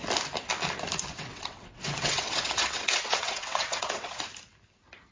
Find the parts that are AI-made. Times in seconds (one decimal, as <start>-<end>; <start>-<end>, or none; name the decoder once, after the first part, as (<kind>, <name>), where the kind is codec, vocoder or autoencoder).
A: 1.1-4.2 (vocoder, WaveNeXt)